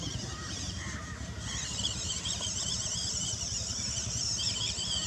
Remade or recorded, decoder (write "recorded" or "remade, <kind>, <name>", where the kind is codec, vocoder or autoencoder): remade, vocoder, BigVGAN v2